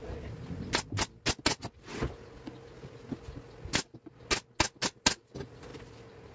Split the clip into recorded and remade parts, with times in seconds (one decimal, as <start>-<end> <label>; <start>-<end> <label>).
0.0-6.3 recorded